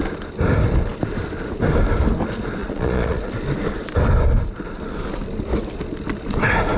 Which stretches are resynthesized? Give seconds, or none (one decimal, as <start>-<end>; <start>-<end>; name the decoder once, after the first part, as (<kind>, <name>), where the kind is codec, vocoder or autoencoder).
2.6-3.3 (vocoder, Vocos)